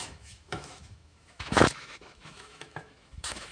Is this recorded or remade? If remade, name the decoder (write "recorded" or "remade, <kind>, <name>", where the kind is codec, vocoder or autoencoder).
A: remade, autoencoder, DAC-VAE